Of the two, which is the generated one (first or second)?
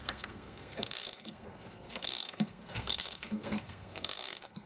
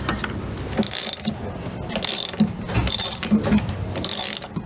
first